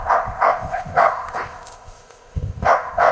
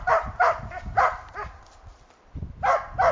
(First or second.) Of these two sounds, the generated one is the first